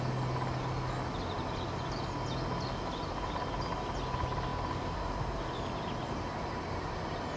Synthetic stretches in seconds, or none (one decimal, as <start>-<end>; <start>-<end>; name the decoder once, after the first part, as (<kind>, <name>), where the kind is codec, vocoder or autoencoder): 4.5-5.1 (vocoder, BigVGAN v2)